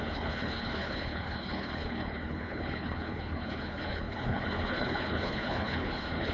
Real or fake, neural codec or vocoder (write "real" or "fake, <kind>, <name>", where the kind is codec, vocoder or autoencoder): fake, codec, HILCodec